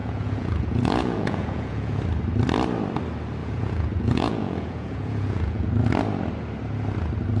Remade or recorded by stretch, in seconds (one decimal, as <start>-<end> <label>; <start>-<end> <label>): 0.0-2.0 remade; 2.0-3.4 recorded; 3.4-5.7 remade; 5.7-7.4 recorded